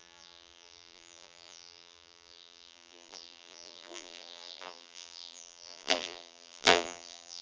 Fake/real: fake